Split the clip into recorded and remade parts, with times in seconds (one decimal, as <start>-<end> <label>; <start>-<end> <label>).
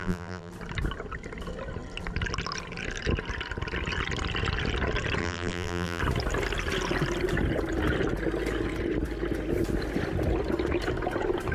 0.0-0.5 remade; 0.5-5.2 recorded; 5.2-6.0 remade; 6.0-11.5 recorded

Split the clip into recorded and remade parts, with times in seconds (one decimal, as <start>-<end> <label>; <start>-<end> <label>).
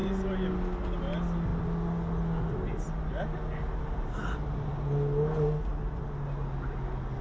0.0-7.2 recorded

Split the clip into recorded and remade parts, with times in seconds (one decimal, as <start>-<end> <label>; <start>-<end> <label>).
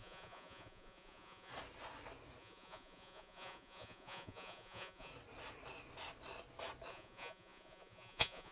0.0-1.5 remade; 1.5-2.4 recorded; 2.4-5.1 remade; 5.1-6.9 recorded; 6.9-8.5 remade